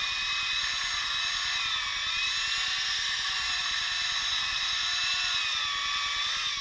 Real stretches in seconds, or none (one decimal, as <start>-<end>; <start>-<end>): 0.0-6.6